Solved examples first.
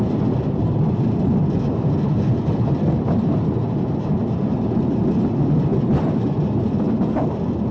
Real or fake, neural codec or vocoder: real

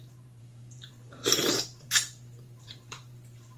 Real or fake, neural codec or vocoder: fake, vocoder, BigVGAN v2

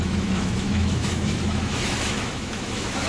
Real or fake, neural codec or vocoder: fake, autoencoder, DAC-VAE